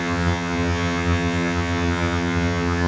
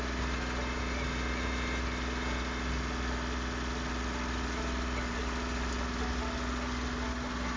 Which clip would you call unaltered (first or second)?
second